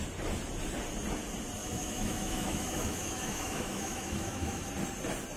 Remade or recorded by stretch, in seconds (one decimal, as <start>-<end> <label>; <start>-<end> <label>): 0.0-1.6 recorded; 1.6-4.6 remade; 4.6-5.4 recorded